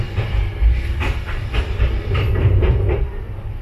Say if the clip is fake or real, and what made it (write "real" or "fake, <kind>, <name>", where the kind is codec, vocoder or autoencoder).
real